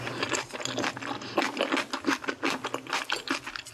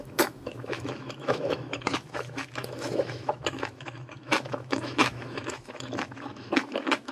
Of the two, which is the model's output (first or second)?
second